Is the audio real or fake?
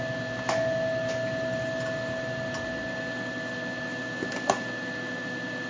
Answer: real